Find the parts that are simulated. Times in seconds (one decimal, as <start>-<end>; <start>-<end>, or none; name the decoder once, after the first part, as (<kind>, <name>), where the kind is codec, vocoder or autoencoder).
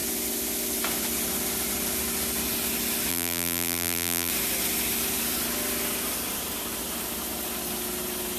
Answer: 3.1-4.3 (vocoder, BigVGAN v2)